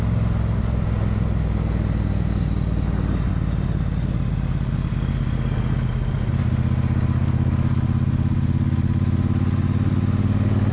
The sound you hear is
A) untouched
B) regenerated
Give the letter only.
A